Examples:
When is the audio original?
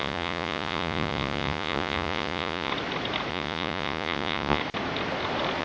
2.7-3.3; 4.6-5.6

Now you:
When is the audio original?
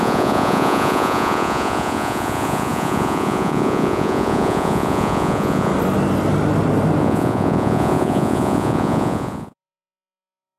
5.7-7.0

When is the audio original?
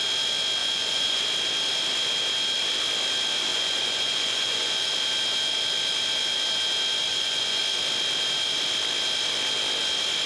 0.0-0.6; 1.2-3.5; 4.9-7.1; 7.6-10.3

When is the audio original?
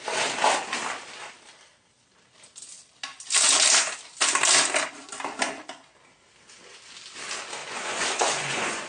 0.0-7.6